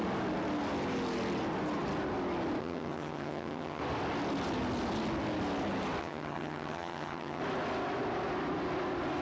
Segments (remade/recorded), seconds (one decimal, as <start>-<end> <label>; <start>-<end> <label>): 0.0-2.6 recorded; 2.6-3.8 remade; 3.8-6.0 recorded; 6.0-7.4 remade; 7.4-9.2 recorded